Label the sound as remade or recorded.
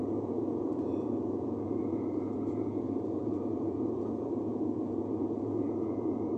remade